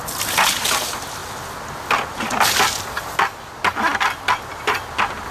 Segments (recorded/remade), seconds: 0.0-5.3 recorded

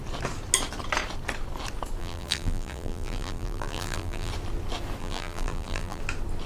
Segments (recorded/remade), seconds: 0.0-2.0 recorded; 2.0-4.3 remade; 4.3-5.0 recorded; 5.0-6.0 remade; 6.0-6.5 recorded

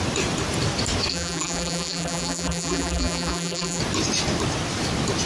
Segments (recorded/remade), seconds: 0.0-1.1 recorded; 1.1-3.8 remade; 3.8-5.3 recorded

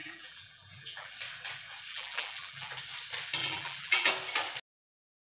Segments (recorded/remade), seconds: 0.0-1.1 remade; 1.1-1.9 recorded; 1.9-2.7 remade; 2.7-3.4 recorded; 3.4-4.1 remade; 4.1-5.3 recorded

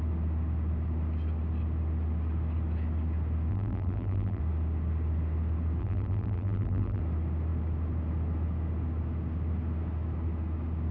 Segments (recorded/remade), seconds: 0.0-3.5 recorded; 3.5-4.4 remade; 4.4-5.8 recorded; 5.8-7.0 remade; 7.0-10.9 recorded